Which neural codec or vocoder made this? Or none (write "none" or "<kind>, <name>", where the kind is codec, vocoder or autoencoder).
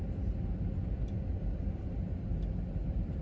none